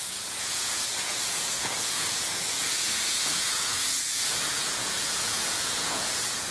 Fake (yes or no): yes